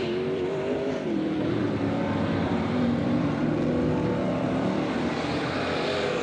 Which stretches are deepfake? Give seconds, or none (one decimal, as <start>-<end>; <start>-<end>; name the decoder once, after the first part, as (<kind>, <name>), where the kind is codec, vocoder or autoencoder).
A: 0.0-3.4 (vocoder, BigVGAN v2); 4.3-6.2